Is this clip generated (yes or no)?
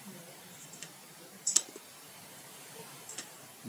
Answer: yes